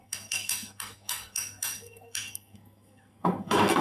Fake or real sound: fake